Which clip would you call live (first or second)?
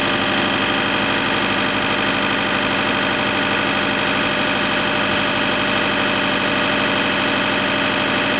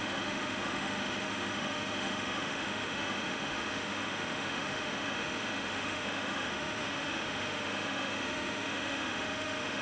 first